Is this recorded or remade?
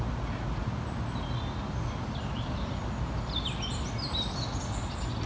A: recorded